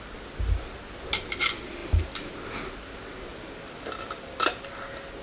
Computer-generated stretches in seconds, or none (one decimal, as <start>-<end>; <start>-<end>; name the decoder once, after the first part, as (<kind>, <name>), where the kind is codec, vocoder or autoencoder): 3.3-4.7 (vocoder, BigVGAN v2)